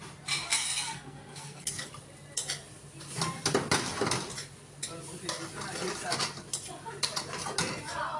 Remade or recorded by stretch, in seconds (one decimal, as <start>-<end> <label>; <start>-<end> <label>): 0.0-0.5 recorded; 0.5-1.9 remade; 1.9-8.2 recorded